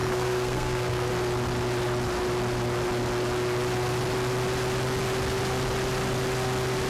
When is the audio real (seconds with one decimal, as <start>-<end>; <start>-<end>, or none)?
1.1-6.9